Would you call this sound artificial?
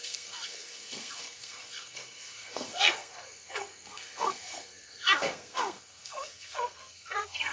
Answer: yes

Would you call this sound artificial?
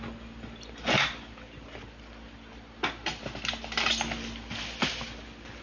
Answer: no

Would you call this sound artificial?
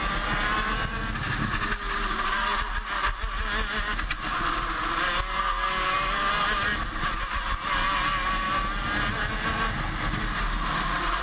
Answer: no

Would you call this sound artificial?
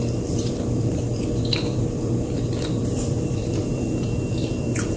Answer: yes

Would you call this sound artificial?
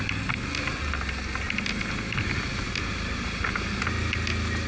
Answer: no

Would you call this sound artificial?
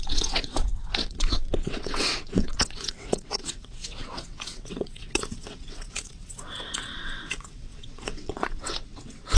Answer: yes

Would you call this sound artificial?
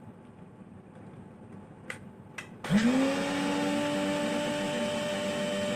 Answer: no